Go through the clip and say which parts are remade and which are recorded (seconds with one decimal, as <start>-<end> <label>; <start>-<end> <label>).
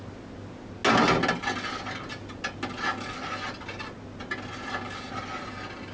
0.0-5.9 recorded